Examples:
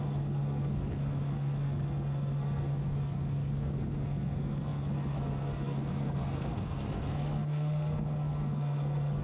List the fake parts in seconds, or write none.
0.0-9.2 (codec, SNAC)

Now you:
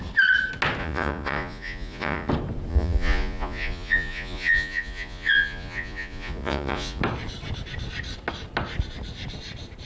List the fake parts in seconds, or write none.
0.8-2.3 (vocoder, Vocos); 2.7-7.0

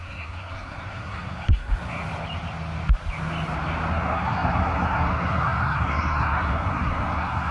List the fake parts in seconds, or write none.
0.0-2.0 (codec, SNAC); 3.9-7.5

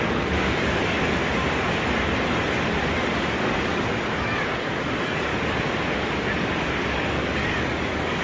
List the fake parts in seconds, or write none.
0.0-1.2 (codec, DAC); 3.2-3.7; 4.5-5.3; 6.0-8.2

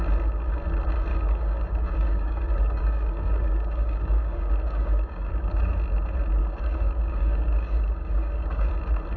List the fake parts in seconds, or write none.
1.1-5.3 (codec, DAC); 6.4-8.7